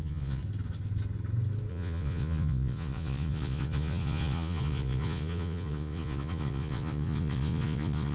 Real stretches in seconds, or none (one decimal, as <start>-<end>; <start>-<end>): 0.4-1.7